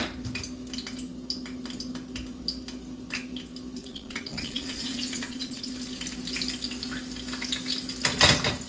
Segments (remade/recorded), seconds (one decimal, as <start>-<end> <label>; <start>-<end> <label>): 0.0-3.8 recorded; 3.8-5.7 remade; 5.7-8.7 recorded